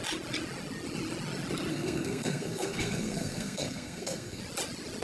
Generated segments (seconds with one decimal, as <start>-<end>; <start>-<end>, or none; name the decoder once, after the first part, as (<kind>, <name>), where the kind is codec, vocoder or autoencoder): 1.7-4.4 (codec, SNAC)